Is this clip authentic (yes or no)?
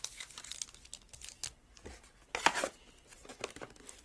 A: yes